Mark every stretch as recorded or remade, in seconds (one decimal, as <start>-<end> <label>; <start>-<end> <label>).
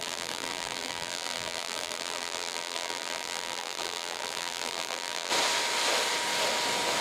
0.0-5.3 remade; 5.3-7.0 recorded